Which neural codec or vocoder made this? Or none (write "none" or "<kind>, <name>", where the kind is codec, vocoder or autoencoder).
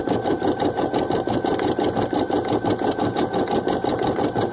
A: none